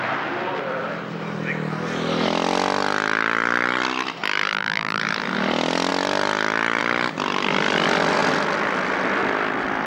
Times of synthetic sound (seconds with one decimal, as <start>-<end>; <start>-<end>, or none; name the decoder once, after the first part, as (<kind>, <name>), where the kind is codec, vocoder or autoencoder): 4.5-5.0 (vocoder, BigVGAN v2)